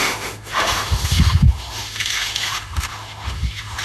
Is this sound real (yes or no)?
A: no